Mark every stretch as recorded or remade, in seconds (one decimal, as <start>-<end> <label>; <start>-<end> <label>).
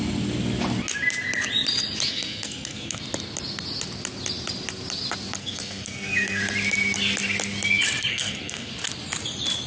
0.0-2.1 recorded; 2.1-3.0 remade; 3.0-5.4 recorded; 5.4-6.4 remade; 6.4-8.1 recorded; 8.1-8.7 remade; 8.7-9.7 recorded